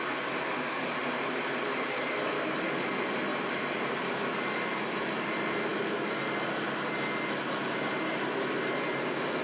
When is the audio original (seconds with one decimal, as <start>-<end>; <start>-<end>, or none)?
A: 0.0-5.7; 6.2-9.4